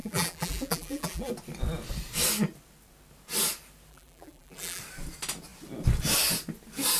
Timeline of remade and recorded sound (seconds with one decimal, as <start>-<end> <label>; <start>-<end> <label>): 0.0-1.3 remade; 1.3-3.9 recorded; 3.9-4.8 remade; 4.8-7.0 recorded